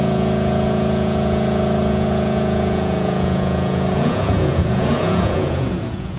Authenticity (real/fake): fake